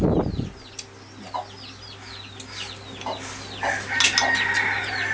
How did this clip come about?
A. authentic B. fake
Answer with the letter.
A